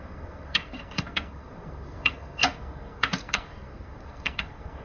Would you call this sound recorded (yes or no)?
no